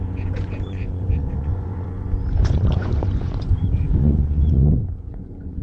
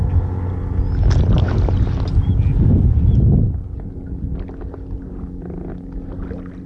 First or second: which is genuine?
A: second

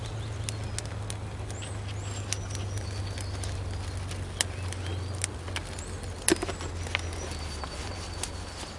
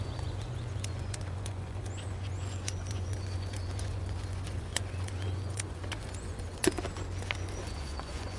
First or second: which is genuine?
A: first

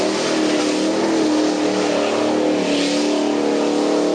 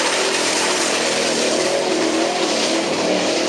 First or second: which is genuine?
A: first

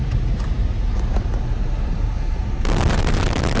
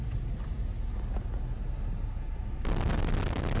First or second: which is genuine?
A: second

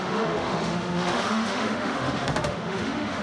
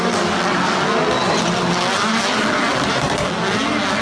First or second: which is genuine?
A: second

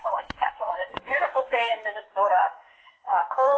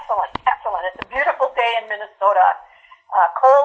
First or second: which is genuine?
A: second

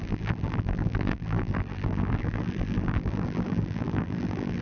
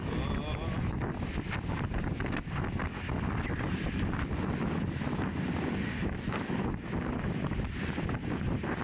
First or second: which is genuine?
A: second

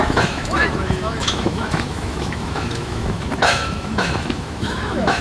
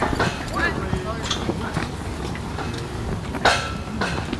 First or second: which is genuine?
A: second